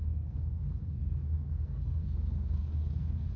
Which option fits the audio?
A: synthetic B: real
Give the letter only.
A